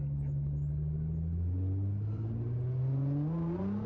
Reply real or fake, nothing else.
real